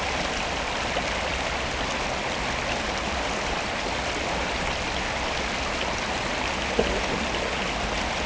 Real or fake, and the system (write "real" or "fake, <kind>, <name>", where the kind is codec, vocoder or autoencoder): real